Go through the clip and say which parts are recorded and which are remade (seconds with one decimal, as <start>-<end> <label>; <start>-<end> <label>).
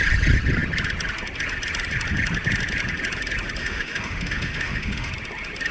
0.0-3.6 recorded; 3.6-5.1 remade; 5.1-5.7 recorded